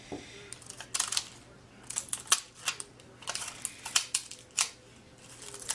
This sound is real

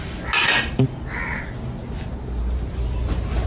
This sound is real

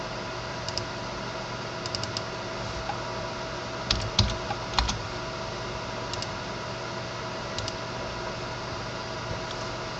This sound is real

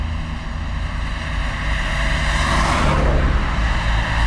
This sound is real